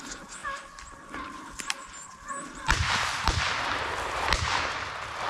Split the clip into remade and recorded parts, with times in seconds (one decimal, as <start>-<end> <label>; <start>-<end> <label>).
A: 0.0-0.4 recorded; 0.4-2.1 remade; 2.1-5.3 recorded